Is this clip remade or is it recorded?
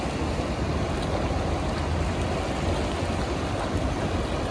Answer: recorded